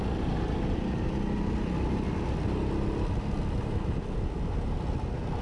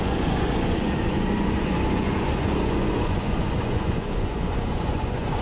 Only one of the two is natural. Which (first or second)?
first